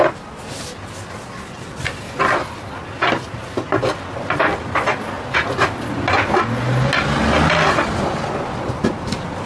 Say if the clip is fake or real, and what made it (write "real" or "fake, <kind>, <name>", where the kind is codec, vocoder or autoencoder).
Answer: real